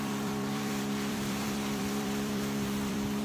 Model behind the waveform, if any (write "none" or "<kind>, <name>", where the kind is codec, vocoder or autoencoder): vocoder, BigVGAN v2